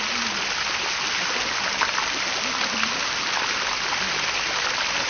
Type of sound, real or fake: real